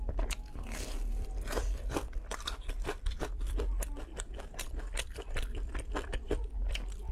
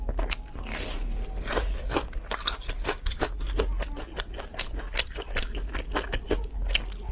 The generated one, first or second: first